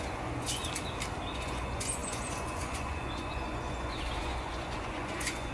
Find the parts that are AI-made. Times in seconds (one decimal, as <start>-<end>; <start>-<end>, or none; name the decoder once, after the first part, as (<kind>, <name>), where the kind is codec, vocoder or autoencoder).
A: 0.0-0.6 (vocoder, Vocos); 1.3-5.5